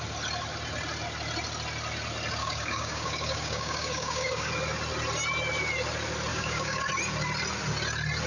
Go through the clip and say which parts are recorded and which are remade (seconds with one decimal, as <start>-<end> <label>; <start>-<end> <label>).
0.0-2.4 recorded; 2.4-4.5 remade; 4.5-6.3 recorded; 6.3-6.9 remade; 6.9-8.3 recorded